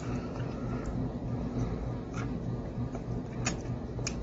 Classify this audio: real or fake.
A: real